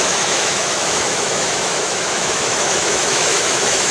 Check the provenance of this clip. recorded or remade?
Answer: remade